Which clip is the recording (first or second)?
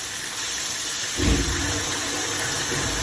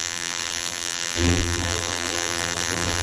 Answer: first